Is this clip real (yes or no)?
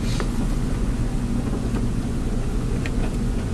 no